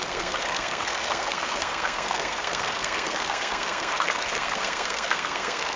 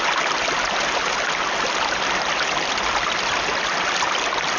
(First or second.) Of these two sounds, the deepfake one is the first